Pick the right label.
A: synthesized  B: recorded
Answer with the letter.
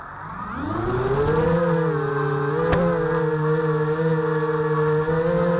B